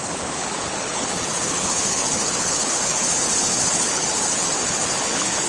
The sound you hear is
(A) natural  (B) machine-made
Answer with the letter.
B